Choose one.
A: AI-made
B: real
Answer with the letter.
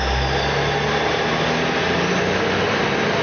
B